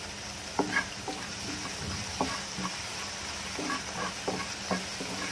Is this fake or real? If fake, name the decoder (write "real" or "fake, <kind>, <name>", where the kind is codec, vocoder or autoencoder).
real